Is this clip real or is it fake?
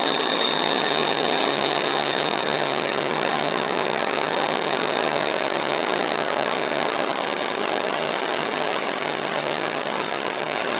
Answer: fake